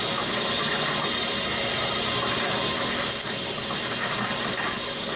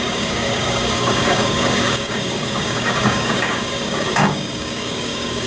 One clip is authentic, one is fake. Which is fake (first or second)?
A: second